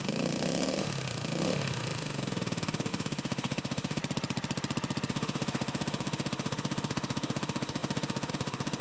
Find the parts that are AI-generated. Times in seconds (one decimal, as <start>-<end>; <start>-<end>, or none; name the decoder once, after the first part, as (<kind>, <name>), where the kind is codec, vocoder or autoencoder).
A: 0.0-4.0 (autoencoder, DAC-VAE); 5.1-8.8